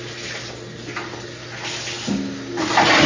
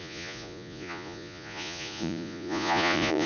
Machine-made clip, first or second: second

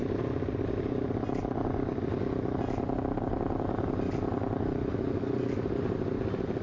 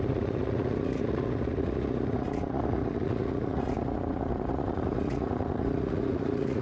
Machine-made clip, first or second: second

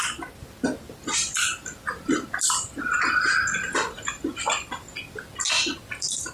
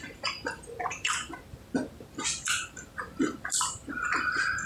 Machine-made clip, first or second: second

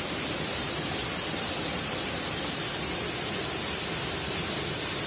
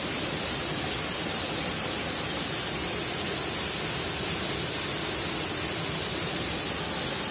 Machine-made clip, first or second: first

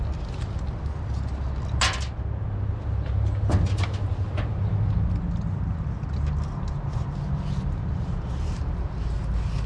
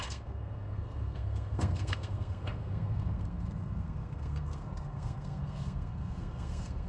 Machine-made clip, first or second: second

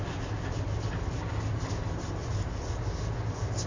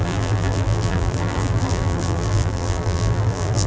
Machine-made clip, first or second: second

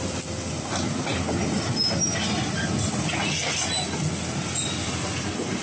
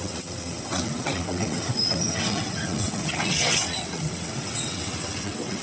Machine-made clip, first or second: second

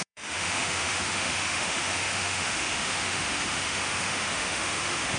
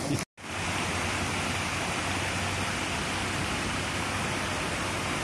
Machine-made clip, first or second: first